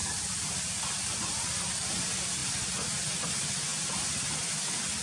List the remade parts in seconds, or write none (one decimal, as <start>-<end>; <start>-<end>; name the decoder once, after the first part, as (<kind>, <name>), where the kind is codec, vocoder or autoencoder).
0.0-1.6 (vocoder, BigVGAN v2)